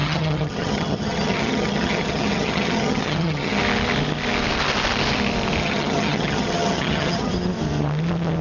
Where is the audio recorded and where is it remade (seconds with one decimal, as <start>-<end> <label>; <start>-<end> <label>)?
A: 0.0-3.6 remade; 3.6-5.6 recorded; 5.6-7.3 remade; 7.3-8.4 recorded